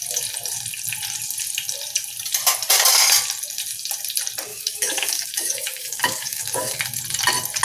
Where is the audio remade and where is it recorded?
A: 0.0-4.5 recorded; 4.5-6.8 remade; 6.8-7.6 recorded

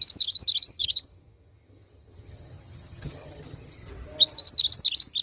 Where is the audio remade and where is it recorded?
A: 0.0-0.8 recorded; 0.8-3.9 remade; 3.9-5.2 recorded

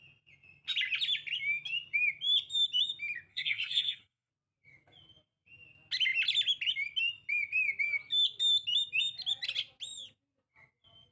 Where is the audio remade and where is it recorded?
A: 0.0-3.3 recorded; 3.3-4.3 remade; 4.3-11.1 recorded